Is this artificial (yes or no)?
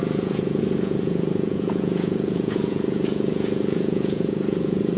yes